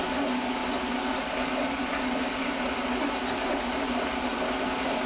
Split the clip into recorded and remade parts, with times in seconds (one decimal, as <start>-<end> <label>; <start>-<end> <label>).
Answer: 0.0-5.1 recorded